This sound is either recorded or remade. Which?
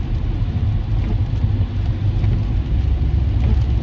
recorded